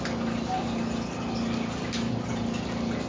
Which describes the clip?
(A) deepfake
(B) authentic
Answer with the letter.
B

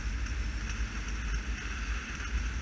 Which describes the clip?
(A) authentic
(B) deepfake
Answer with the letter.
A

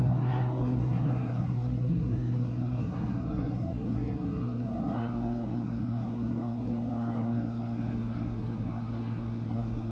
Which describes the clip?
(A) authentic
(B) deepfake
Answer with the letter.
B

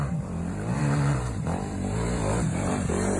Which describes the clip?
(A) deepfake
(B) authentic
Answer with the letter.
A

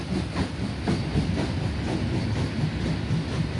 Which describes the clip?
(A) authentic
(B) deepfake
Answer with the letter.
A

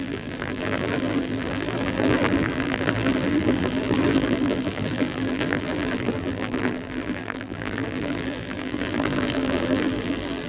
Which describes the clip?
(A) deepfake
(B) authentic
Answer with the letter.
A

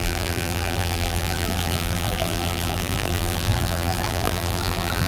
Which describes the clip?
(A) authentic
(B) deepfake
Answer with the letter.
B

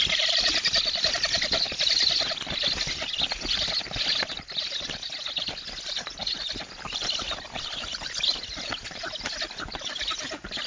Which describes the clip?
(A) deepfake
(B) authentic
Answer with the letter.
B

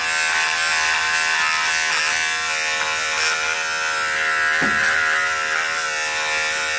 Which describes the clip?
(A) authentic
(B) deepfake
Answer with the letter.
A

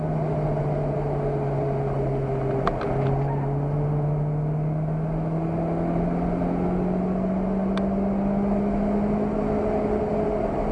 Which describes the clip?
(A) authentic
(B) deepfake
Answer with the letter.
A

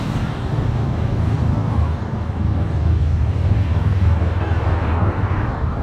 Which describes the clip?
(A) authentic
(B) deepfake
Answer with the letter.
B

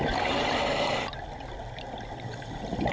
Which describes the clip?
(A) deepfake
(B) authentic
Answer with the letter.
B